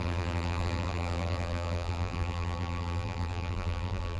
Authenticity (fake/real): fake